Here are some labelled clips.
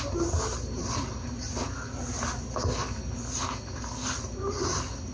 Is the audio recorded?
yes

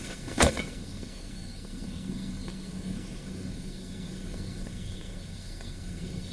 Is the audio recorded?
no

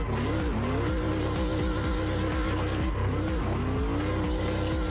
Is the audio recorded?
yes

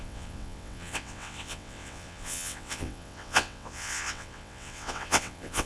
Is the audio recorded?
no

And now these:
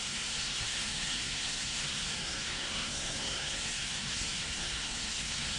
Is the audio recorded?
no